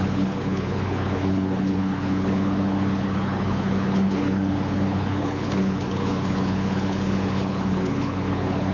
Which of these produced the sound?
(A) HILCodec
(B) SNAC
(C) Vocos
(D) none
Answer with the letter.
A